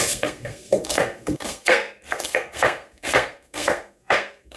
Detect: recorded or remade remade